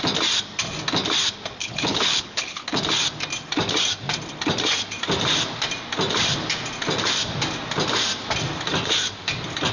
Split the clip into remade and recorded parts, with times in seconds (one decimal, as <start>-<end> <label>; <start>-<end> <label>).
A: 0.0-1.6 recorded; 1.6-2.8 remade; 2.8-9.7 recorded